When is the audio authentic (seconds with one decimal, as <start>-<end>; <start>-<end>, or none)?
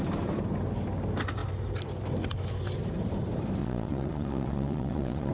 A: 0.0-3.6